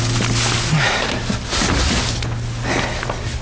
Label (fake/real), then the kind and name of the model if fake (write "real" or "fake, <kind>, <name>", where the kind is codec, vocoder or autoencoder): real